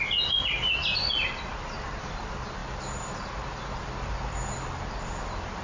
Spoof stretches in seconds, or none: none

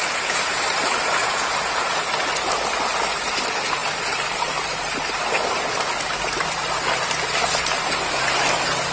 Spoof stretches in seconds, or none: 0.0-0.6 (vocoder, Vocos); 1.2-2.0